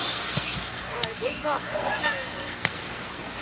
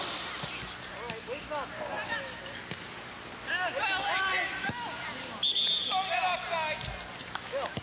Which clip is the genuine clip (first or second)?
second